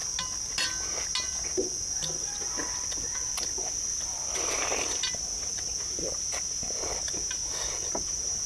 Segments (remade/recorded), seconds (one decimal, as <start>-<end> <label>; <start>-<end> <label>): 0.0-8.5 recorded